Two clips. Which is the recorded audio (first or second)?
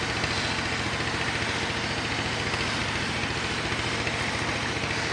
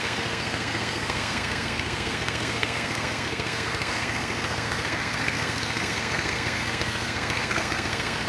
first